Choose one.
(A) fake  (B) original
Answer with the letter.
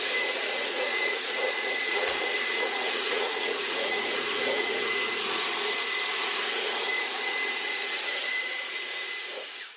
A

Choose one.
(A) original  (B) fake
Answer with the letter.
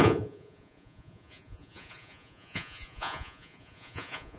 B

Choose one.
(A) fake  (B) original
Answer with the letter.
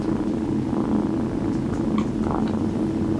B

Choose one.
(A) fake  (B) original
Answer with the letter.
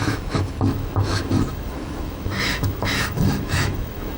A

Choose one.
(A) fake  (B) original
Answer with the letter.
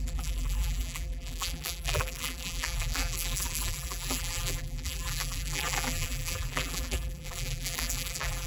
A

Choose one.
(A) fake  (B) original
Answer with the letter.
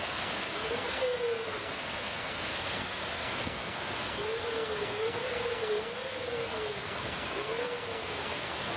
A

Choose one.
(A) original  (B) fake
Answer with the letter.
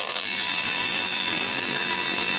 B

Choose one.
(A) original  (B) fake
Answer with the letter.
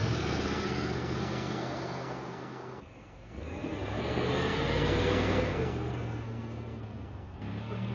B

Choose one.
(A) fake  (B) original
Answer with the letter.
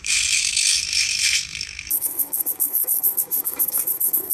A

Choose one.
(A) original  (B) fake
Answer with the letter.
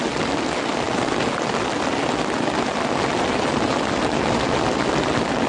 A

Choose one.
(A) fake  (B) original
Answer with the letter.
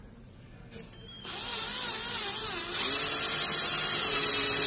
B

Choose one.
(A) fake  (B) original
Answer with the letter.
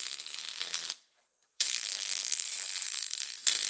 A